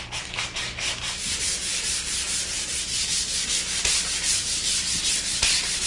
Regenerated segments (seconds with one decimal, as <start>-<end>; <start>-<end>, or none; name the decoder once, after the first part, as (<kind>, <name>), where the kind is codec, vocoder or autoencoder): none